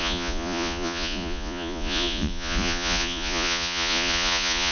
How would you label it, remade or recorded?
remade